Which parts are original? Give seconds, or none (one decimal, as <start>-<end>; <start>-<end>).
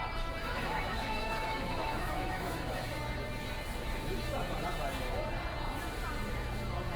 0.0-0.4; 2.9-7.0